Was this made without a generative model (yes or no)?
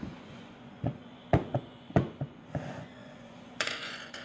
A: no